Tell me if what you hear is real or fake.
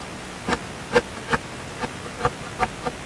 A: fake